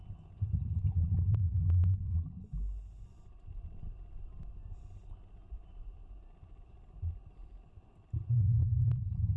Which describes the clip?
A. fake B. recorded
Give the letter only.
B